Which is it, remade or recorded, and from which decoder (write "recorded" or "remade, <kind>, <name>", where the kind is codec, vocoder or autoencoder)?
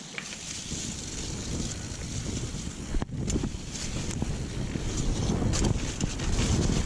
recorded